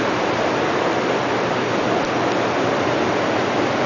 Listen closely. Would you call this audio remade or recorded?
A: recorded